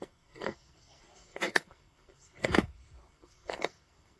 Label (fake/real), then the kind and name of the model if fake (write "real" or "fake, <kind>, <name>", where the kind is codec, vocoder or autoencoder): fake, codec, SNAC